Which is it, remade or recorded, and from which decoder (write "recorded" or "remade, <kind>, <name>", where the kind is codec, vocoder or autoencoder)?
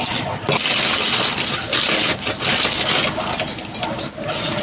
recorded